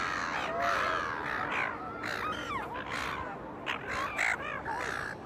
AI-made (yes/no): no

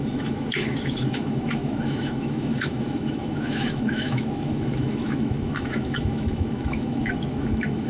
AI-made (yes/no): yes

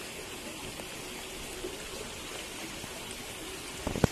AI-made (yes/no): no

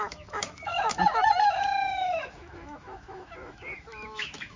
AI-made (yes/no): yes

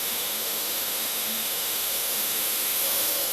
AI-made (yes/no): yes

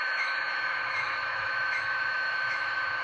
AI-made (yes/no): yes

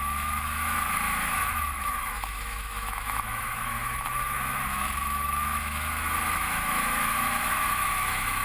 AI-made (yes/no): yes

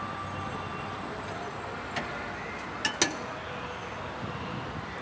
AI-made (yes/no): no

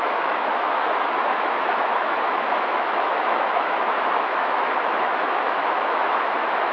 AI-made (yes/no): yes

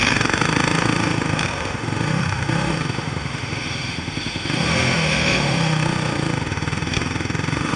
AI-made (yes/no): yes